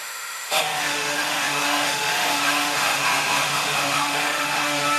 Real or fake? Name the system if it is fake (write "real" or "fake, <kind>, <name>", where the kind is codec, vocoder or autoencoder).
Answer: fake, autoencoder, DAC-VAE